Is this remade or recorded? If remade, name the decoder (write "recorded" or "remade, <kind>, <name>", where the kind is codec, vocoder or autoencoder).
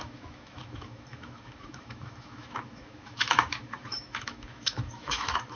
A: remade, autoencoder, DAC-VAE